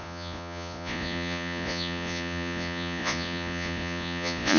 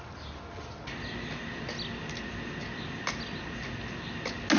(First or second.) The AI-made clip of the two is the first